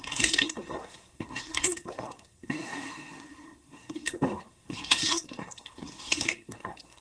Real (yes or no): no